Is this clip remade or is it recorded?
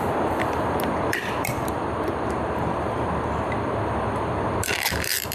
remade